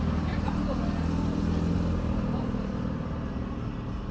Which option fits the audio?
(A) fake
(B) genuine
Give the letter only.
B